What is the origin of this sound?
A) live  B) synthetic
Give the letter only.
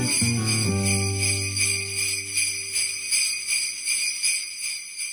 A